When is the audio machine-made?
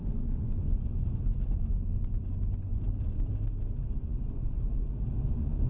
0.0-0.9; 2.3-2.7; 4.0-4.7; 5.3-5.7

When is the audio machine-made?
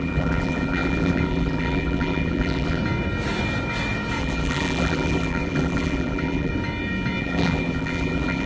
0.0-2.8; 4.2-6.5; 7.2-8.5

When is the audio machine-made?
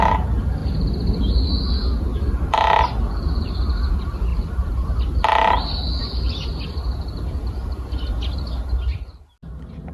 0.6-1.4; 2.1-2.8; 4.3-5.2; 6.0-7.2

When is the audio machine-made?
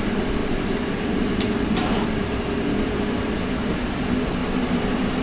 0.4-2.9; 4.4-5.2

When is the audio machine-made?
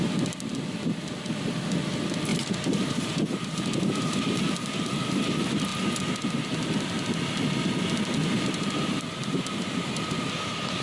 2.3-4.8; 8.2-10.3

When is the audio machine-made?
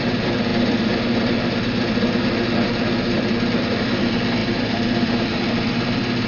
0.0-6.3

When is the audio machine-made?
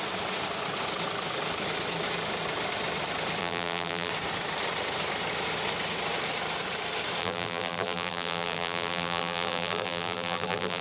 3.4-4.1; 7.2-10.8